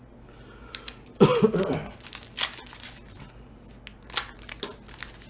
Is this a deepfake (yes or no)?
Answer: no